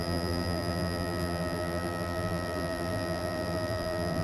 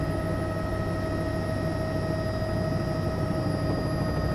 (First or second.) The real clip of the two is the second